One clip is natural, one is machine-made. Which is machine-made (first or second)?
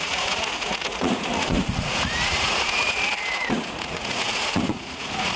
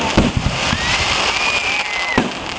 first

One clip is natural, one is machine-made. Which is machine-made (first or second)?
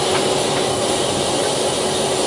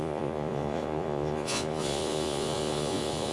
second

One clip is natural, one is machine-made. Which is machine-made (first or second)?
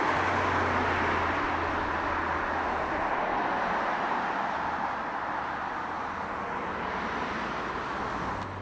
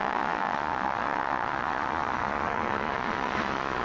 second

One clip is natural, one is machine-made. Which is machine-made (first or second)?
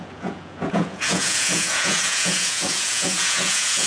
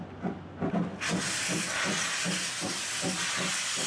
first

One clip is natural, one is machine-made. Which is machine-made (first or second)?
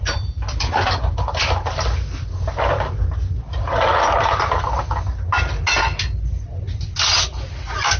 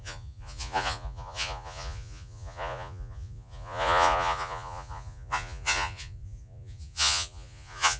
second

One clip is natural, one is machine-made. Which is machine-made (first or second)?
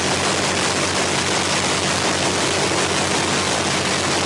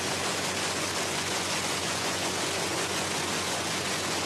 second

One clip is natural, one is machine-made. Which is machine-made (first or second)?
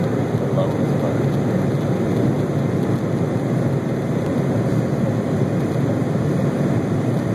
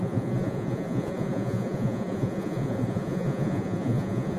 second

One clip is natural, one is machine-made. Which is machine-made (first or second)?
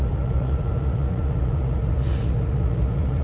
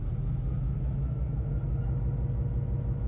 first